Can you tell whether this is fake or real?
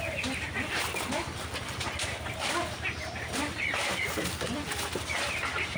real